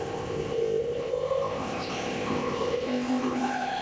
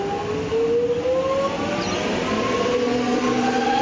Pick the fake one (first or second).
first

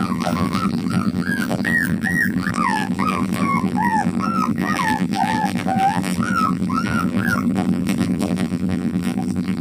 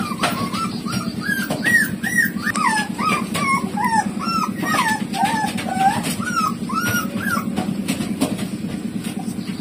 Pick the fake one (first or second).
first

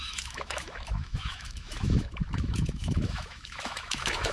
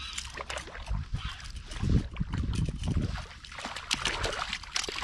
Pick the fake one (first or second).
first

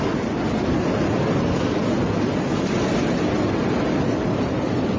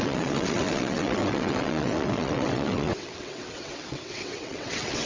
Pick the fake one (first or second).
second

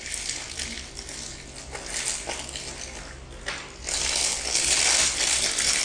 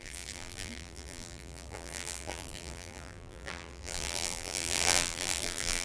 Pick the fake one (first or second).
second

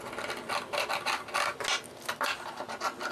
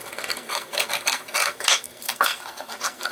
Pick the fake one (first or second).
second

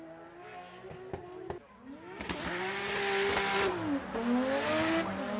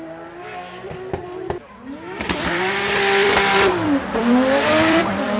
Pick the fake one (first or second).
second